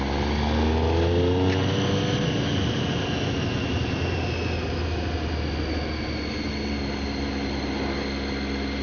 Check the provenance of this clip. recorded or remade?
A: recorded